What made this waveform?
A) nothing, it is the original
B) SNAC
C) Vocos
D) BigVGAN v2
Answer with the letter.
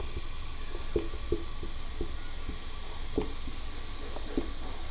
A